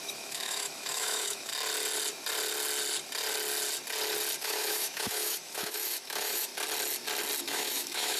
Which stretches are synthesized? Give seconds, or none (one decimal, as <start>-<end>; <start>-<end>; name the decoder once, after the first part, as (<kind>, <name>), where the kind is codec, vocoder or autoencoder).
0.0-1.5 (autoencoder, DAC-VAE); 4.4-6.5; 7.4-8.2